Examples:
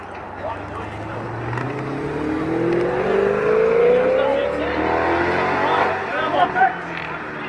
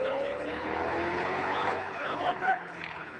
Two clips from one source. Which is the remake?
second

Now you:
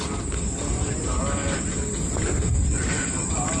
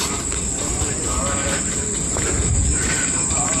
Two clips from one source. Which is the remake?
second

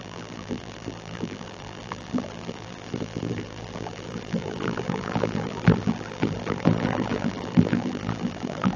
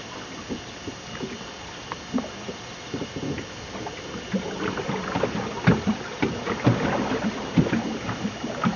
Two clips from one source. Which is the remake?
first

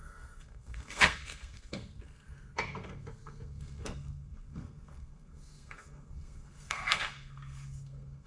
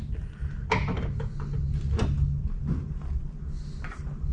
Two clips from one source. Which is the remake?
first